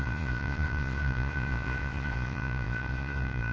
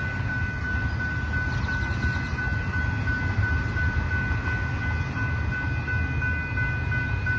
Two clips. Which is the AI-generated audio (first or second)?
first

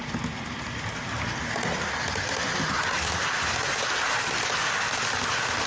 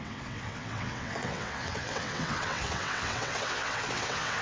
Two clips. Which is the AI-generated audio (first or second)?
second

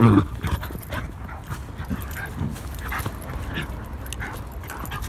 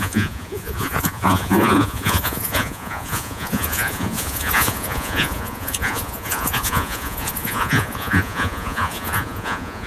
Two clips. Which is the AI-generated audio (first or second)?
second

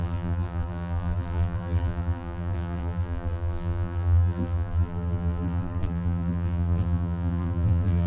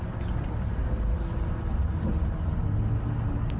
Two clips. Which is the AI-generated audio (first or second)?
first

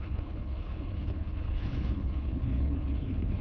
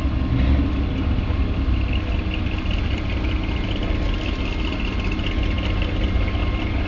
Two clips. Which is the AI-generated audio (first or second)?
first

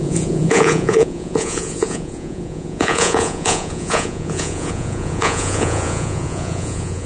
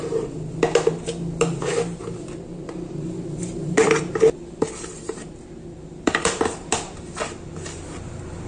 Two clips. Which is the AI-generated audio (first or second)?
first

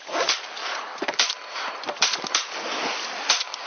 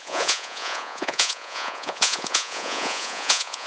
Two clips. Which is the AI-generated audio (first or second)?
second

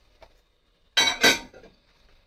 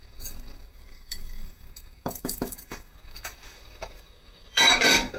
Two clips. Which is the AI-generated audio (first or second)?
second